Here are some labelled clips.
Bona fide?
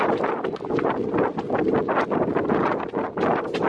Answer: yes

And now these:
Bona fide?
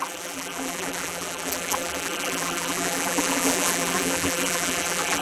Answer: no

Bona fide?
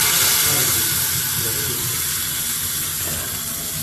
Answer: yes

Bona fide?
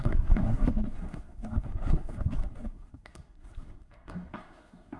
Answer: no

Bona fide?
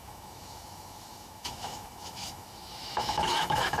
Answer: no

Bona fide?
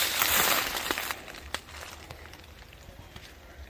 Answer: no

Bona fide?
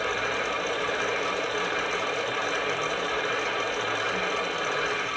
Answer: yes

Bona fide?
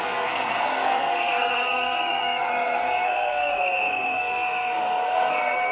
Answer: no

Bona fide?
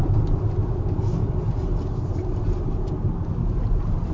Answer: yes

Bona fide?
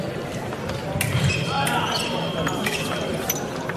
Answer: yes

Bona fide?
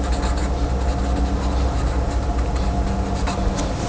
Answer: yes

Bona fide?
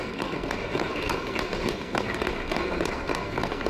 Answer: no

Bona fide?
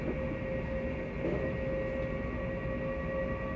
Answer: yes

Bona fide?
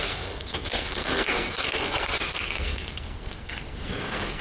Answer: no